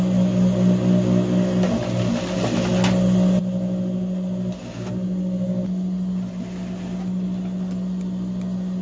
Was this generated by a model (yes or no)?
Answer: no